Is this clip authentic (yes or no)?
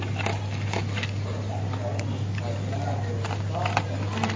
yes